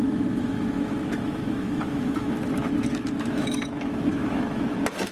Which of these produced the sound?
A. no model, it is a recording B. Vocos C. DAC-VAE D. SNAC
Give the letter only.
C